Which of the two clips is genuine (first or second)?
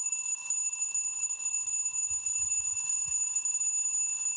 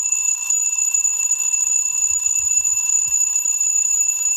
first